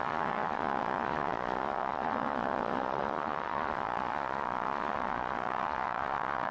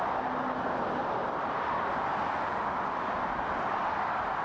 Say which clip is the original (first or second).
second